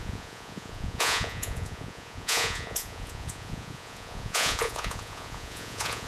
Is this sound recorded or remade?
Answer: remade